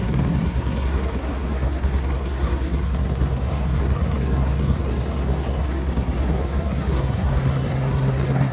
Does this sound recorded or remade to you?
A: remade